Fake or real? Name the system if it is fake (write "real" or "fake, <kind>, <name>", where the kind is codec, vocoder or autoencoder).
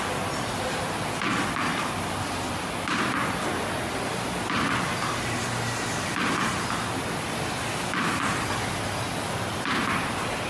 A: real